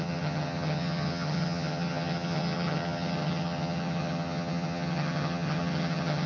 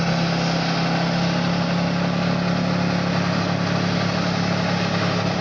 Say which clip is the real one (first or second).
second